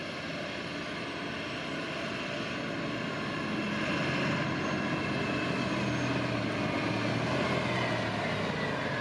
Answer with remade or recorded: recorded